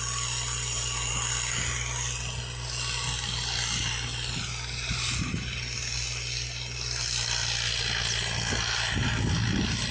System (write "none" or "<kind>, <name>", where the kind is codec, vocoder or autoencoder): none